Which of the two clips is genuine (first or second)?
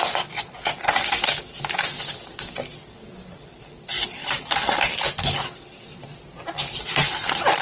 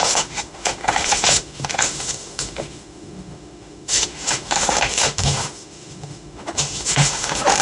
first